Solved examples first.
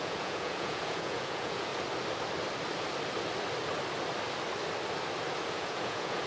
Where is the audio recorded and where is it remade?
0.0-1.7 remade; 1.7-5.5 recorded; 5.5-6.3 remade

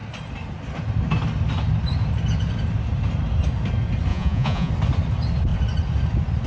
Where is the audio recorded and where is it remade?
0.0-4.1 recorded; 4.1-4.7 remade; 4.7-6.5 recorded

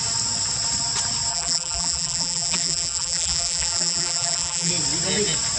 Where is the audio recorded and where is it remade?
0.0-1.3 recorded; 1.3-4.7 remade; 4.7-5.6 recorded

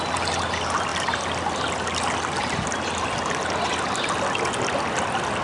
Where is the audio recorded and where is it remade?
0.0-5.4 recorded

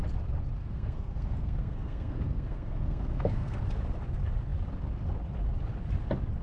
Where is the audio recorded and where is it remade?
0.0-0.6 recorded; 0.6-3.6 remade; 3.6-6.4 recorded